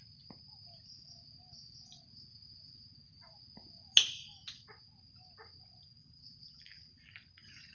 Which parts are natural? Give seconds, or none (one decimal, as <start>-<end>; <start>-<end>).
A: 0.0-6.0; 7.1-7.7

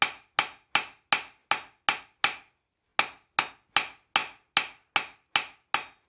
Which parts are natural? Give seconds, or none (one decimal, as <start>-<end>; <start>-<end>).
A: 0.0-6.1

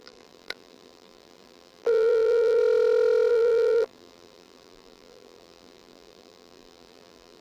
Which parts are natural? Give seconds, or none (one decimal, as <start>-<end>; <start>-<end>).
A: 2.6-3.3

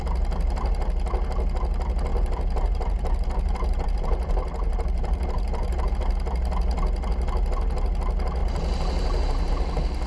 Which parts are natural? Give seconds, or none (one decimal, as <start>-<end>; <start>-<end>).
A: 0.0-2.1; 5.9-8.4; 9.5-10.1

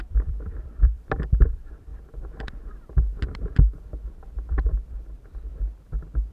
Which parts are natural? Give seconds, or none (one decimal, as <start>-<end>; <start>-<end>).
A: 1.9-4.6; 5.5-6.3

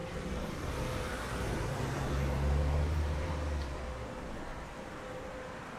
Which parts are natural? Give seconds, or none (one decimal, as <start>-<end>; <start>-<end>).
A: 3.3-4.5; 5.3-5.8

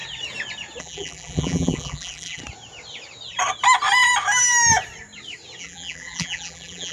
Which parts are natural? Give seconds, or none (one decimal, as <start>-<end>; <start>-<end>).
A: 0.0-0.8; 2.4-5.6

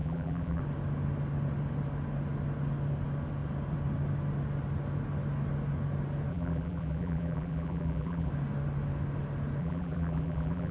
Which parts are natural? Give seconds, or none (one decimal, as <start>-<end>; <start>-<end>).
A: 0.6-6.3; 8.3-9.6